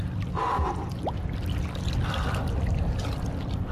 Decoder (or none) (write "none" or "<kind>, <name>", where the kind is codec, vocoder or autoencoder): none